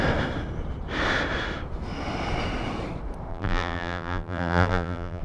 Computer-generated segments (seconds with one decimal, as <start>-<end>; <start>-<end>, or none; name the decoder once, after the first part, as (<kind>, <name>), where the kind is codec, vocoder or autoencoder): 3.3-5.2 (vocoder, BigVGAN v2)